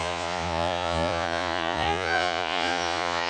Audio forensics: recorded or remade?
remade